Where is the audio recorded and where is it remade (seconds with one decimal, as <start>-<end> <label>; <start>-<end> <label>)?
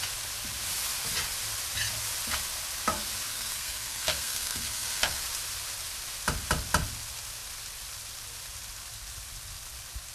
0.0-3.3 recorded; 3.3-5.2 remade; 5.2-10.1 recorded